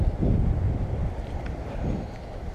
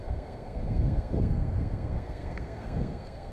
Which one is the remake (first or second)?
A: second